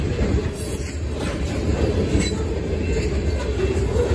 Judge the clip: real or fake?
real